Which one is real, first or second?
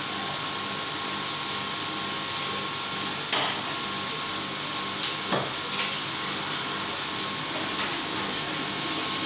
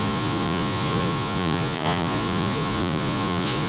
first